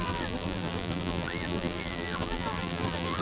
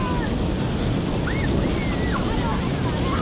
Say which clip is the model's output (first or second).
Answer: first